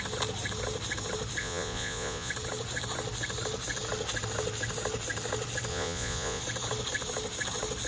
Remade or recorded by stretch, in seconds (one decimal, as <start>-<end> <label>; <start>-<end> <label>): 0.0-1.4 recorded; 1.4-2.3 remade; 2.3-5.7 recorded; 5.7-6.4 remade; 6.4-7.9 recorded

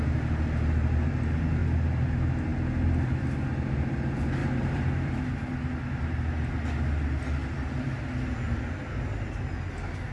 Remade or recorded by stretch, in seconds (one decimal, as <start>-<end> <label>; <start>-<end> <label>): 0.0-4.4 recorded; 4.4-5.2 remade; 5.2-10.1 recorded